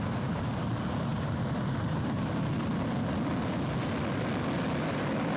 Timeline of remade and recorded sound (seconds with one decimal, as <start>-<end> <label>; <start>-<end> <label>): 0.0-5.4 recorded